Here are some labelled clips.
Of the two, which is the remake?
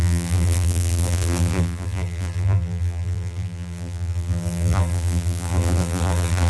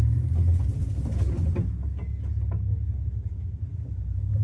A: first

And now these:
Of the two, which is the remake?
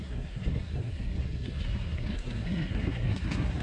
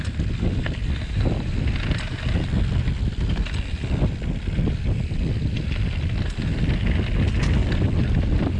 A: first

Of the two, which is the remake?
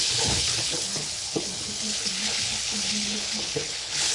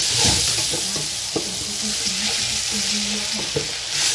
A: first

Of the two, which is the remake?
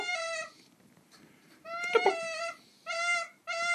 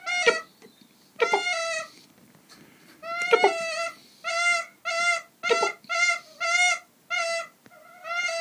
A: first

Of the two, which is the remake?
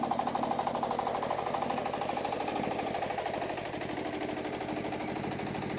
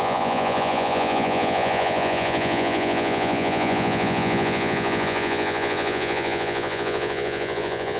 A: second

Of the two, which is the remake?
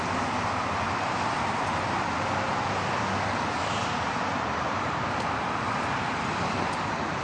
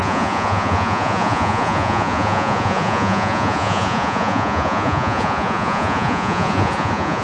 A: second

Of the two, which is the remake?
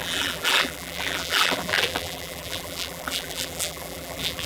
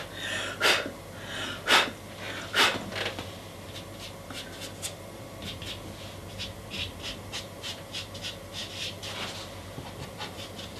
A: first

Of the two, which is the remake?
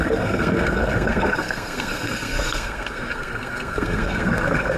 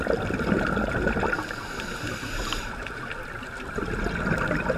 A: first